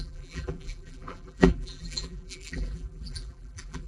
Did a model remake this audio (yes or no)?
yes